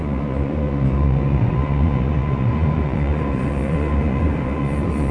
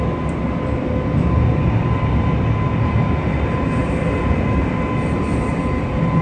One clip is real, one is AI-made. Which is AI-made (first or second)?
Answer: first